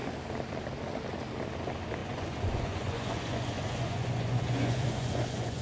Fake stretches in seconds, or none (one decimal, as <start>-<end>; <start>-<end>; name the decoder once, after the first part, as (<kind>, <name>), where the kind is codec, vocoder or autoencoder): 2.0-5.6 (vocoder, Vocos)